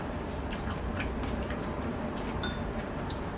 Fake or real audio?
fake